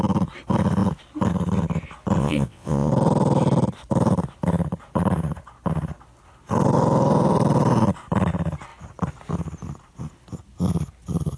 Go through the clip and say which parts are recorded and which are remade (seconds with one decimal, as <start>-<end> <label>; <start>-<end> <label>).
0.0-2.2 recorded; 2.2-2.9 remade; 2.9-11.4 recorded